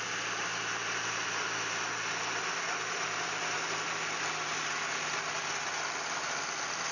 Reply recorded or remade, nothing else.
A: recorded